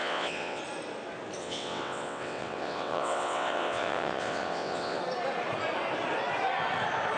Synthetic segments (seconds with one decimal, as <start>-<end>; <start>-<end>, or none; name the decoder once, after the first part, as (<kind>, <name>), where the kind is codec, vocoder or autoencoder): 0.0-0.6 (vocoder, WaveNeXt); 1.4-5.0